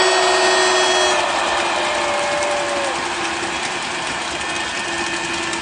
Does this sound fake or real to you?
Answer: real